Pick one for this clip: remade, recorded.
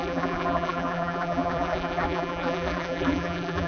remade